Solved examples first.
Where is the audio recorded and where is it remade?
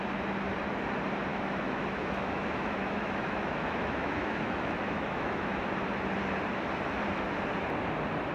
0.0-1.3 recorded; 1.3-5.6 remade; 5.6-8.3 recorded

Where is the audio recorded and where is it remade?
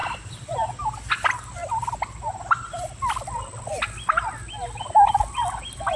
0.0-6.0 recorded